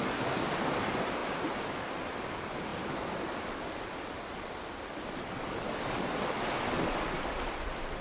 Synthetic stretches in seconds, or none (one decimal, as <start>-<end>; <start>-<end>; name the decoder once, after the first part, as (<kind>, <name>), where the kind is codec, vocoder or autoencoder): none